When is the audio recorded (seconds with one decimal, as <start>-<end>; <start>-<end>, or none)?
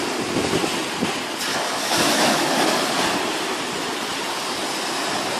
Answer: 0.0-1.5; 2.9-5.4